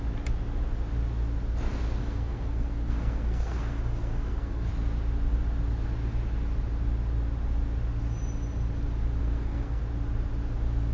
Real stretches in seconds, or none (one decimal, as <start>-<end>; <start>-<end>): 0.0-2.0; 4.7-9.2; 9.8-10.9